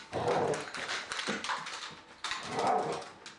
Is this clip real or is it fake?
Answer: real